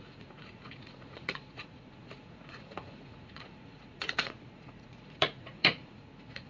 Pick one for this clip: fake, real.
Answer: fake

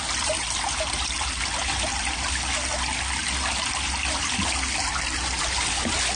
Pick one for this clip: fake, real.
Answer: real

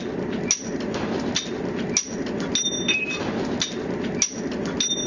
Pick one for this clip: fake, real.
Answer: real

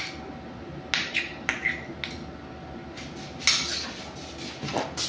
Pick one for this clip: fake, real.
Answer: real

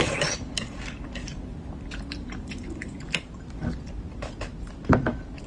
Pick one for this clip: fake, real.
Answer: real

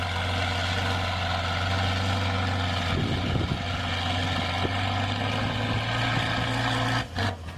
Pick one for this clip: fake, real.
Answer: real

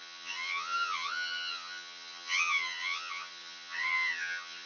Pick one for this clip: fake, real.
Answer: fake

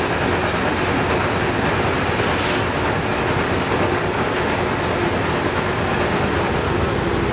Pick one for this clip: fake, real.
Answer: real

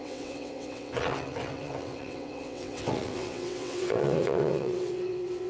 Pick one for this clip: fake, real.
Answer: fake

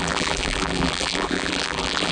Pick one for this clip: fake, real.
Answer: fake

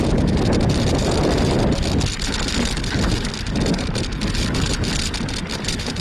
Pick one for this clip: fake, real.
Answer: real